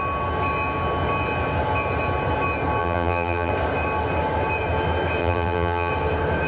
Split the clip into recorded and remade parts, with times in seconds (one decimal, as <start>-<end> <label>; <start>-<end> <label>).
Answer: 0.0-2.8 recorded; 2.8-3.5 remade; 3.5-5.2 recorded; 5.2-5.9 remade; 5.9-6.5 recorded